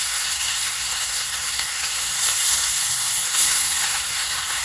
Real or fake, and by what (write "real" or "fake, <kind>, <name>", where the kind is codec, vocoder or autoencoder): fake, codec, SNAC